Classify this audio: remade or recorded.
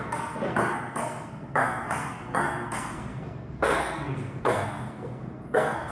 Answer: remade